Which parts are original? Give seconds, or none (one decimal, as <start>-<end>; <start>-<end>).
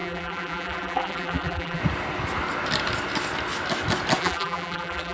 1.8-4.2